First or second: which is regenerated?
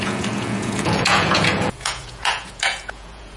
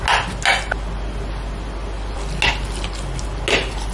first